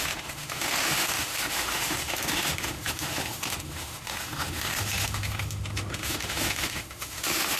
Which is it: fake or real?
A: fake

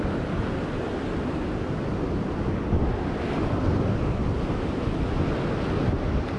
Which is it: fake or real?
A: real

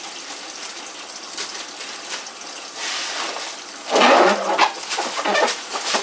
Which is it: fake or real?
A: real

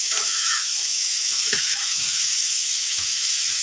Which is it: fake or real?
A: fake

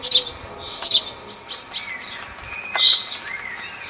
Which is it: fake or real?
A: real